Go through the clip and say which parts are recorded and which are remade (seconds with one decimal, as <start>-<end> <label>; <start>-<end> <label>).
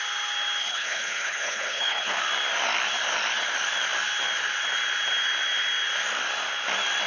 0.0-0.6 recorded; 0.6-2.2 remade; 2.2-7.1 recorded